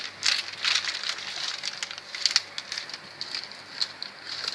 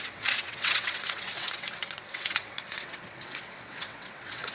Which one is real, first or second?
first